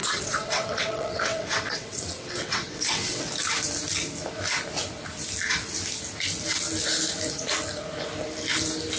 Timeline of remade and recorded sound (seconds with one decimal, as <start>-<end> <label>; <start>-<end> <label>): 0.0-3.3 remade; 3.3-9.0 recorded